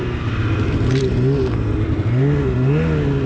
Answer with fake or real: real